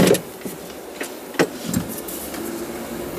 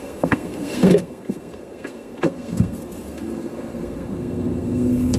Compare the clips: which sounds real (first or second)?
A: first